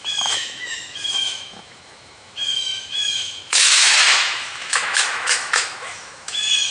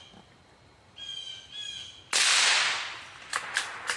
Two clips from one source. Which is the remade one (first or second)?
first